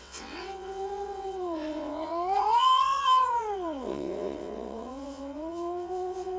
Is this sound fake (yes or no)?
yes